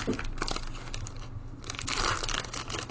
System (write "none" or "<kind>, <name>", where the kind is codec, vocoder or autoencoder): none